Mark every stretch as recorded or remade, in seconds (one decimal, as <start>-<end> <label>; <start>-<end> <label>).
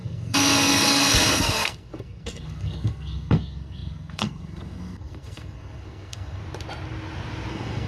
0.0-6.4 remade; 6.4-7.5 recorded; 7.5-7.9 remade